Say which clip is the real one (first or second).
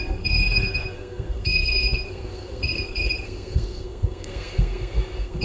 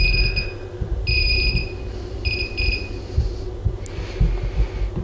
second